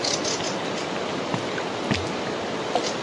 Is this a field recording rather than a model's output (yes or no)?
yes